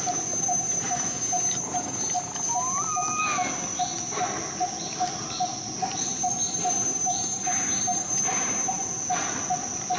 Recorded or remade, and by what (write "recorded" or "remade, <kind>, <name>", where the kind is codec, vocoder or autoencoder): recorded